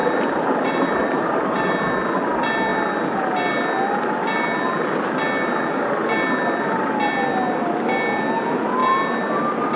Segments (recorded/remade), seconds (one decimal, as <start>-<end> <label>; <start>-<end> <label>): 0.0-1.7 remade; 1.7-9.8 recorded